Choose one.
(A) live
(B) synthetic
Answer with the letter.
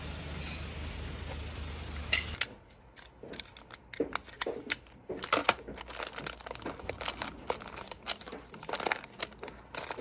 A